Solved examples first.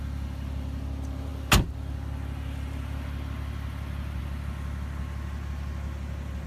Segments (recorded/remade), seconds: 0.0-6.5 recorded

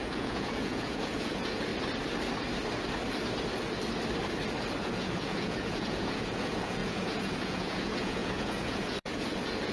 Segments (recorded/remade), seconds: 0.0-1.7 remade; 1.7-4.8 recorded; 4.8-9.7 remade

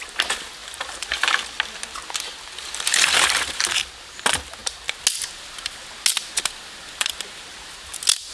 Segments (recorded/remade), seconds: 0.0-8.3 recorded

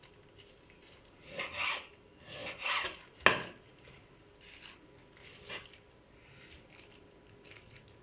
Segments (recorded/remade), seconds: 0.0-8.0 recorded

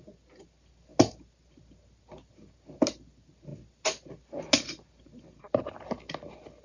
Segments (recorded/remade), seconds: 0.0-6.6 recorded

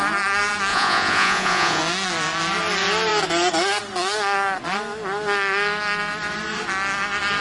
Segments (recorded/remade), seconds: 0.0-0.7 recorded; 0.7-1.8 remade; 1.8-7.4 recorded

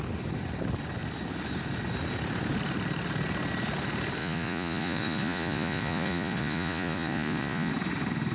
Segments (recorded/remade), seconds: 0.0-4.2 recorded; 4.2-7.7 remade; 7.7-8.3 recorded